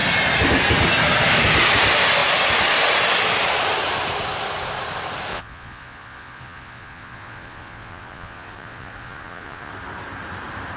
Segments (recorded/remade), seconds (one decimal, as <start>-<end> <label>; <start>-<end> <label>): 0.0-5.3 recorded; 5.3-9.7 remade; 9.7-10.8 recorded